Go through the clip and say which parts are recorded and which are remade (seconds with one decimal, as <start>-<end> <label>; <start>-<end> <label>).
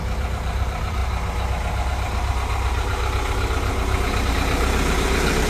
0.0-1.0 remade; 1.0-4.3 recorded; 4.3-5.5 remade